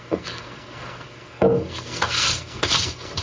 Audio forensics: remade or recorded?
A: remade